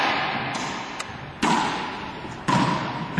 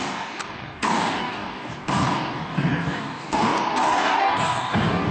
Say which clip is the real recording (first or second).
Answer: first